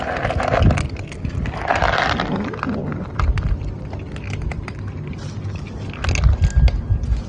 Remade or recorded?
recorded